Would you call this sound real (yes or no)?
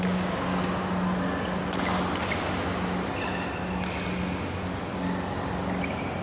yes